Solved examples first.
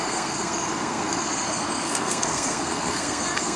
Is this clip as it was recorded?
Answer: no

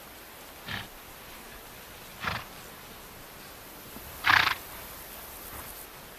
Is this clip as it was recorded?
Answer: yes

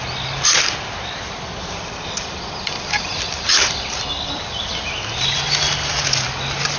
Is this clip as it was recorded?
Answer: yes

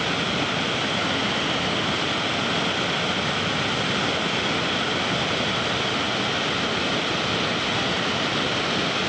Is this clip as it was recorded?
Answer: yes